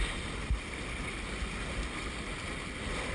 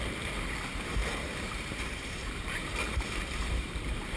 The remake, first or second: second